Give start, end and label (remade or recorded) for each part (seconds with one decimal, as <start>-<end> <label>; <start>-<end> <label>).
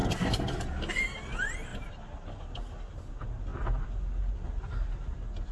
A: 0.0-5.5 recorded